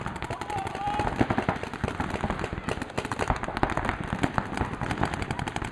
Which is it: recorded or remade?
remade